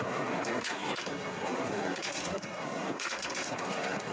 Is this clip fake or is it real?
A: fake